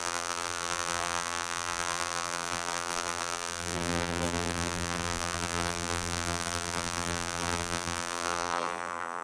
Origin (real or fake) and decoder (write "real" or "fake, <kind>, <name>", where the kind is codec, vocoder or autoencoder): fake, vocoder, BigVGAN v2